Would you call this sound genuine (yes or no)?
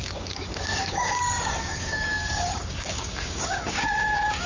no